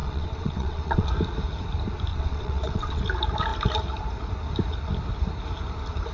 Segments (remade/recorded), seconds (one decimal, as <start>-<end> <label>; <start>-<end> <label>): 0.0-1.1 remade; 1.1-2.1 recorded; 2.1-3.0 remade; 3.0-6.1 recorded